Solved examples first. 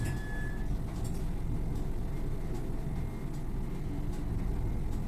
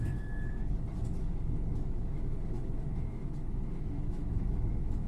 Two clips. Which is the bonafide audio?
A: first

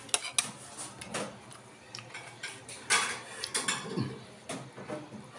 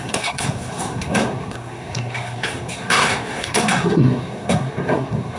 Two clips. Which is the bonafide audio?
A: first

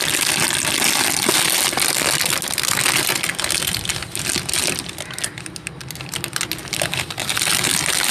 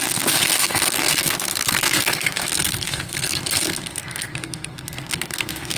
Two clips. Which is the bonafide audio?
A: first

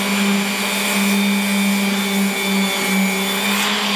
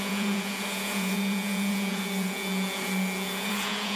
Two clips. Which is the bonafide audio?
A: first